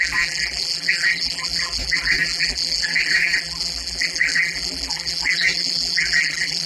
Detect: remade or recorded remade